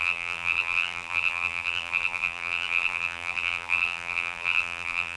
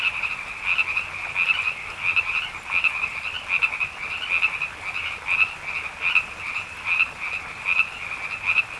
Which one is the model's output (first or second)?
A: first